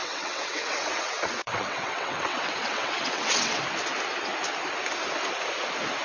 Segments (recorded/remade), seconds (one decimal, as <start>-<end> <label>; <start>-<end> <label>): 0.0-3.6 remade; 3.6-6.0 recorded